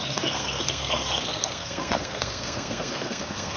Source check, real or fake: fake